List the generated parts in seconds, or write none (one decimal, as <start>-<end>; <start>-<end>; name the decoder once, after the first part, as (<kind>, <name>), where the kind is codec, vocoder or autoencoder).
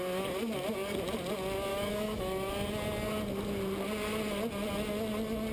1.7-2.5 (autoencoder, DAC-VAE)